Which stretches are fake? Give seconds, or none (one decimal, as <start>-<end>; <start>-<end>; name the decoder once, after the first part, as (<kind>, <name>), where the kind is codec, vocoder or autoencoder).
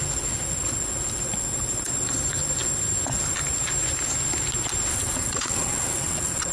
4.9-6.5 (vocoder, WaveNeXt)